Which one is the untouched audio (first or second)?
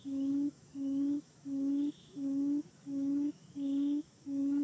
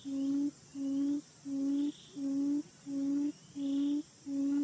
second